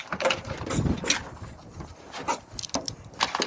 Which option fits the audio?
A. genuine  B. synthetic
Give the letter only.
A